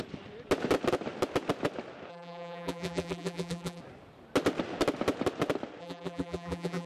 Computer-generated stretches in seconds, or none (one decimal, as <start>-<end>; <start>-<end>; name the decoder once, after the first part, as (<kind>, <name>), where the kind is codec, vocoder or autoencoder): 2.1-3.8 (vocoder, BigVGAN v2); 5.8-6.9